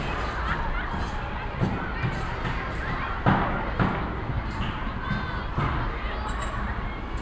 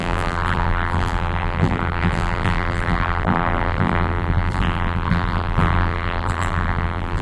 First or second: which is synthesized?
second